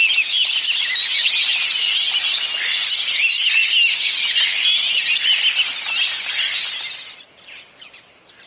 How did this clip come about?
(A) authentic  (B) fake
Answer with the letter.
A